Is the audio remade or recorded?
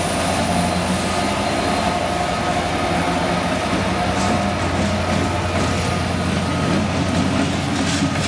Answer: recorded